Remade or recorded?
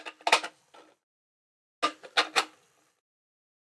recorded